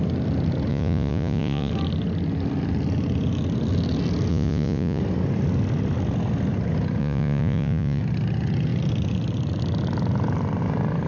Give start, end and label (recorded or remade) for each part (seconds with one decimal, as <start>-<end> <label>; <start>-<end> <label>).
0.0-0.7 recorded; 0.7-1.7 remade; 1.7-4.3 recorded; 4.3-5.0 remade; 5.0-7.0 recorded; 7.0-8.0 remade; 8.0-11.1 recorded